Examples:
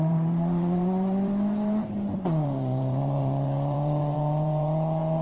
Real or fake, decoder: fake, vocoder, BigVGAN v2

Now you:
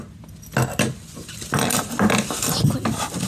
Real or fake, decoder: real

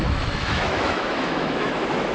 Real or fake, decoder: fake, autoencoder, DAC-VAE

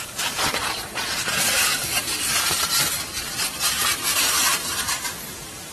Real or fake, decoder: fake, vocoder, BigVGAN v2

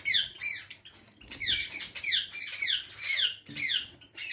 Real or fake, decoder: fake, vocoder, BigVGAN v2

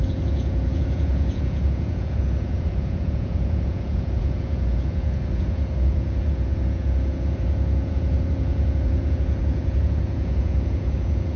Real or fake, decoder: fake, vocoder, Vocos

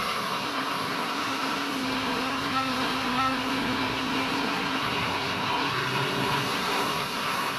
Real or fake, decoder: fake, codec, SNAC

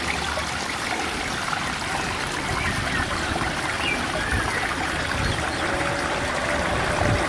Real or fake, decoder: real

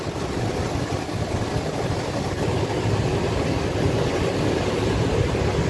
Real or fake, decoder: real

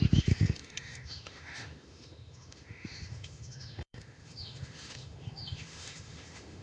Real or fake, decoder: fake, autoencoder, DAC-VAE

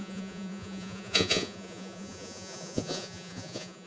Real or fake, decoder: fake, vocoder, Vocos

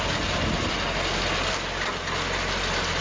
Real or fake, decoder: real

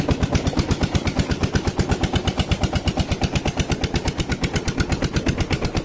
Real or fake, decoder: real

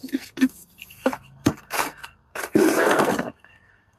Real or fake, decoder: fake, codec, SNAC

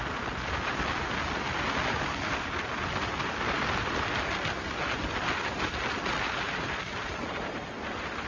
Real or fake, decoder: real